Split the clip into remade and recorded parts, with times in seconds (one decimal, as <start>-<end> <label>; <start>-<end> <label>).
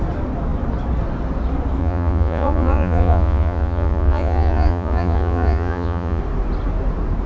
0.0-1.8 recorded; 1.8-6.2 remade; 6.2-7.3 recorded